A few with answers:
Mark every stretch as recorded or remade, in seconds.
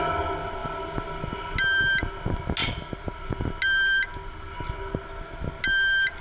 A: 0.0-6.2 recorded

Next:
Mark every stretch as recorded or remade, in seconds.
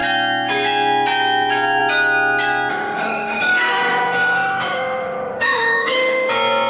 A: 0.0-2.7 recorded; 2.7-6.3 remade; 6.3-6.7 recorded